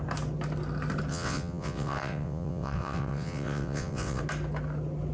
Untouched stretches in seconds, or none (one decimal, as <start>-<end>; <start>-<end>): 0.0-1.1; 4.2-5.1